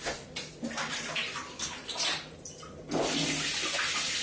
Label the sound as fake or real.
real